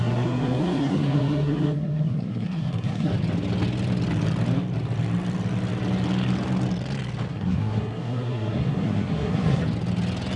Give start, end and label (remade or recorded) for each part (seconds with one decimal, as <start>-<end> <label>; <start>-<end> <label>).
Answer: 0.0-3.1 remade; 3.1-7.3 recorded; 7.3-9.6 remade; 9.6-10.4 recorded